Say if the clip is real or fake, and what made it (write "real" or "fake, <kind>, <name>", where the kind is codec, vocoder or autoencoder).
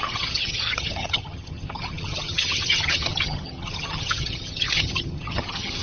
fake, vocoder, HiFi-GAN